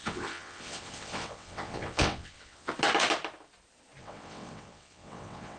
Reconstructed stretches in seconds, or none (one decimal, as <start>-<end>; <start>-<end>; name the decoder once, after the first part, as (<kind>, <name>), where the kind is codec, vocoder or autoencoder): 0.0-2.7 (vocoder, WaveNeXt); 4.0-5.6

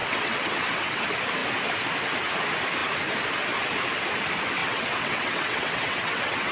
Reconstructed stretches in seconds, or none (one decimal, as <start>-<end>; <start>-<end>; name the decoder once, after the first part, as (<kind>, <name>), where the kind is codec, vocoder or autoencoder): 0.0-1.0 (vocoder, WaveNeXt); 4.6-6.5

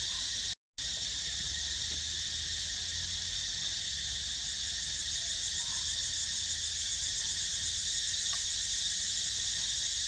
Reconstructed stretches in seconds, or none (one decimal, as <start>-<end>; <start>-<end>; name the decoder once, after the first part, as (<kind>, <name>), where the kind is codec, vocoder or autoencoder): none

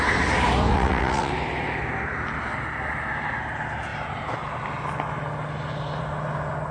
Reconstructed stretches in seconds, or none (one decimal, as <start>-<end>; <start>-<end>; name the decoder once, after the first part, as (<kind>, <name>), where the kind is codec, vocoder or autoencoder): 0.7-1.3 (vocoder, WaveNeXt)

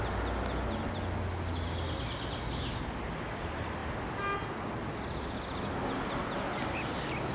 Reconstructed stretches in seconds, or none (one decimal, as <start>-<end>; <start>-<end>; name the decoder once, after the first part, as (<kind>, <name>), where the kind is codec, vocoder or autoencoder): none

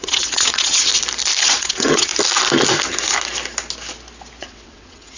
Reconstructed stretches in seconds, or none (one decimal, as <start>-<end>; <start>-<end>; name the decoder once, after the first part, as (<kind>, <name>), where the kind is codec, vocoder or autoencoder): 0.0-0.9 (vocoder, WaveNeXt); 1.4-2.1; 4.4-5.2